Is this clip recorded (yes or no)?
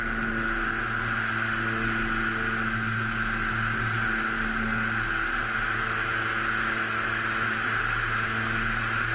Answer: yes